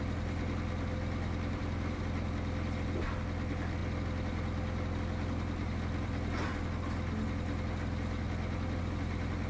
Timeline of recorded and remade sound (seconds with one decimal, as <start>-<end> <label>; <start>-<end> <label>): 0.0-9.5 recorded